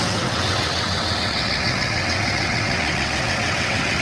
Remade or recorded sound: remade